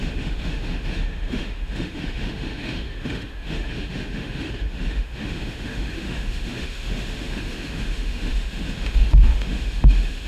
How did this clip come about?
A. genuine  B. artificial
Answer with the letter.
B